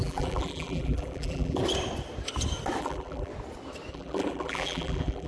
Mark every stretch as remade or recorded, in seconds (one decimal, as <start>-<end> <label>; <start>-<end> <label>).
0.0-1.6 remade; 1.6-2.8 recorded; 2.8-3.3 remade; 3.3-3.9 recorded; 3.9-5.3 remade